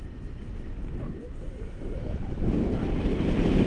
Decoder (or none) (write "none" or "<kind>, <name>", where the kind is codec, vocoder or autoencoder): none